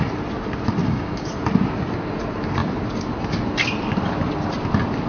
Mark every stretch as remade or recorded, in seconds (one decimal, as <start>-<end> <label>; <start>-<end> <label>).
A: 0.0-0.8 recorded; 0.8-1.3 remade; 1.3-5.1 recorded